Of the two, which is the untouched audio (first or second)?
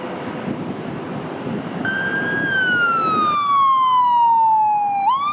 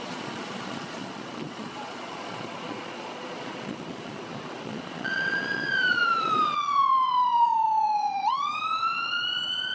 first